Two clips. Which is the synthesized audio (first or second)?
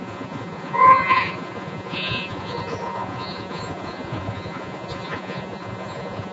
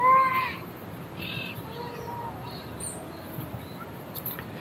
first